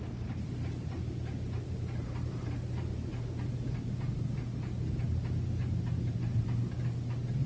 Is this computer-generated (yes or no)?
no